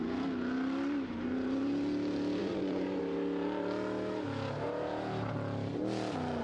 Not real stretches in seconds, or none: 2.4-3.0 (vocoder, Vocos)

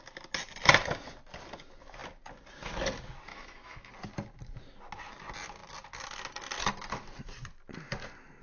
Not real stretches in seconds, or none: 3.3-3.9 (autoencoder, DAC-VAE)

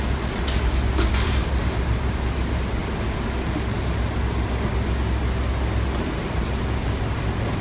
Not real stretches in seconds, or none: none

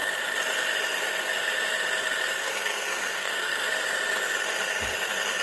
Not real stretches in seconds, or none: 2.4-3.7 (codec, SNAC)

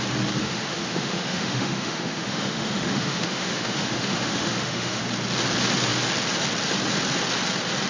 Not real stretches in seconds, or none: 0.4-5.0 (autoencoder, DAC-VAE)

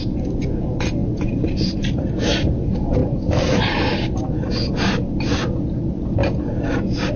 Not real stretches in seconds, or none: 1.0-2.3 (vocoder, BigVGAN v2); 3.0-4.5

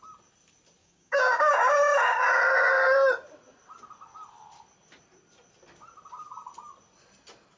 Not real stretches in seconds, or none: 0.8-1.5 (codec, DAC)

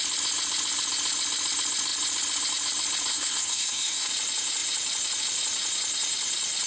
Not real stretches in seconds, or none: 3.1-4.1 (codec, SNAC)